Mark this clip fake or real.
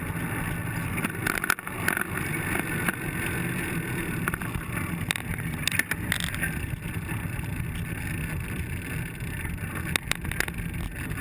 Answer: real